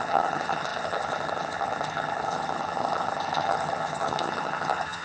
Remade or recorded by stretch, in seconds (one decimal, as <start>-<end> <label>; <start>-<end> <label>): 0.0-5.0 remade